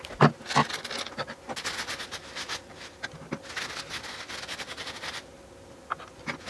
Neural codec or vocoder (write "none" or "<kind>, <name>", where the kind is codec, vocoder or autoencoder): none